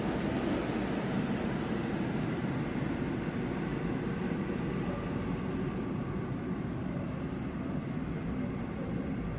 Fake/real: real